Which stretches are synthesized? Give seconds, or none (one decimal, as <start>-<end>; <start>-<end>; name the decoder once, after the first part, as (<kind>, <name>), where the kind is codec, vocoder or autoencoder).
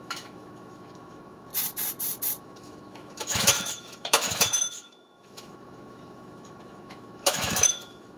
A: 0.0-1.5 (autoencoder, DAC-VAE); 2.4-8.2